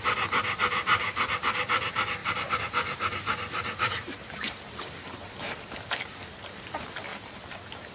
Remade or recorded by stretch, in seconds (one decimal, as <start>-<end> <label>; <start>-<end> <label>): 0.0-0.8 recorded; 0.8-1.3 remade; 1.3-2.2 recorded; 2.2-5.3 remade; 5.3-7.9 recorded